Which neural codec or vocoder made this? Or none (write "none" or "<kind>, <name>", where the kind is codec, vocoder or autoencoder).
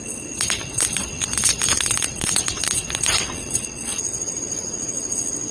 vocoder, WaveNeXt